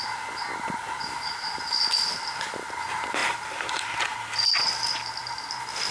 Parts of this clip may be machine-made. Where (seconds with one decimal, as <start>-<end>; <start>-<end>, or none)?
none